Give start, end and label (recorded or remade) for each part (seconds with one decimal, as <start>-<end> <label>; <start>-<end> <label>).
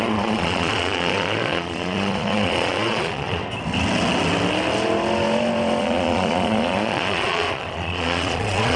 0.0-3.4 remade; 3.4-5.8 recorded; 5.8-8.8 remade